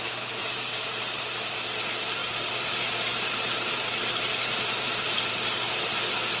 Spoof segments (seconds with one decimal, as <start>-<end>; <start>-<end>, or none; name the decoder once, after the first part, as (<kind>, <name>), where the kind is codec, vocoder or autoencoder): 0.4-1.1 (vocoder, BigVGAN v2); 2.2-6.0